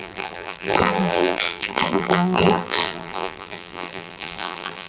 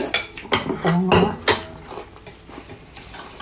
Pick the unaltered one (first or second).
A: second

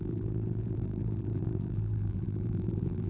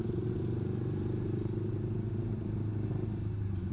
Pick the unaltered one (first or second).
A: second